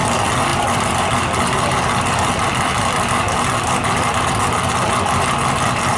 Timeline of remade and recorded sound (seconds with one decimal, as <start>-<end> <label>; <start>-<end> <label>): 0.0-6.0 recorded